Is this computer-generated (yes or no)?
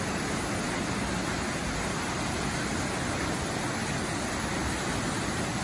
no